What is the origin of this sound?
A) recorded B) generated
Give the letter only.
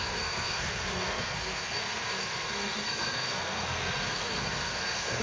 B